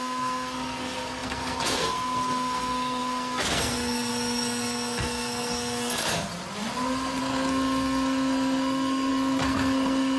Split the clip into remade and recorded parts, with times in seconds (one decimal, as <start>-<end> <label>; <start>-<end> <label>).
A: 0.0-6.3 remade; 6.3-7.2 recorded; 7.2-10.2 remade